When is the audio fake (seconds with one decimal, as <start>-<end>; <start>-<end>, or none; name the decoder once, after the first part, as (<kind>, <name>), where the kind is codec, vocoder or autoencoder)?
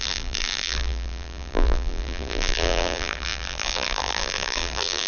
0.0-5.1 (vocoder, BigVGAN v2)